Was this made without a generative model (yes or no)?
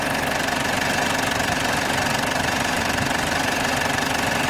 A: no